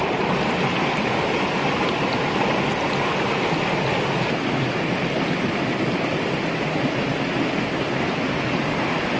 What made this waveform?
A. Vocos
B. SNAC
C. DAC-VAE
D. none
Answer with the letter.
D